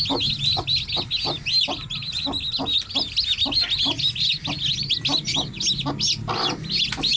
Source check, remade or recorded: recorded